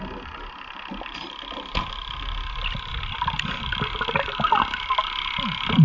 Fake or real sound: real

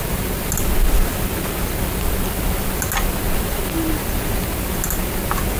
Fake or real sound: real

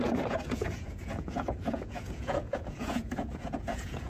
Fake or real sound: fake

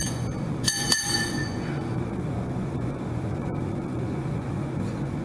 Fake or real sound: fake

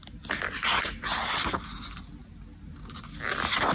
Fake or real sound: real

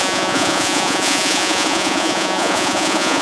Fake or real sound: fake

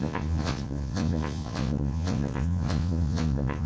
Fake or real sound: fake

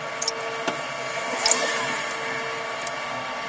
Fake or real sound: real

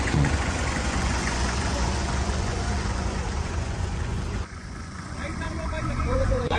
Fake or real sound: fake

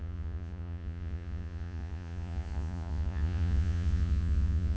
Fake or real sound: fake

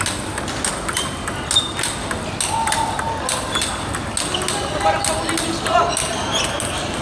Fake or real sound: real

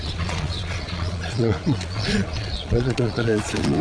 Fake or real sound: fake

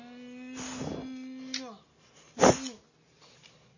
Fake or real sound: real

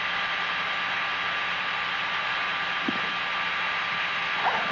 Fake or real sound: real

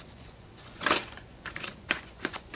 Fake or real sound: fake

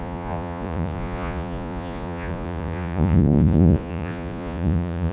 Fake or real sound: fake